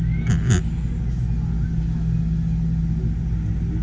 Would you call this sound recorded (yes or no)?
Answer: yes